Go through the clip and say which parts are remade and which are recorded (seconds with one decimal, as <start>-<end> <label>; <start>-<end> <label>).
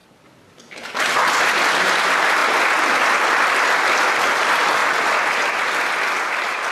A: 0.0-6.7 recorded